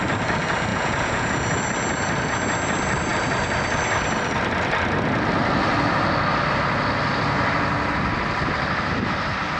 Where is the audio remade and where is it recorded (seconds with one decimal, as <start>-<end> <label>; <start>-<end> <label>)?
0.0-0.7 recorded; 0.7-1.3 remade; 1.3-9.6 recorded